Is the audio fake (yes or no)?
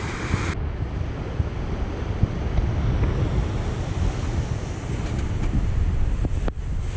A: no